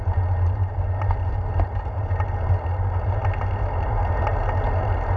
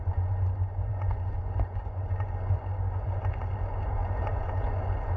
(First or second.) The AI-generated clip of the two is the second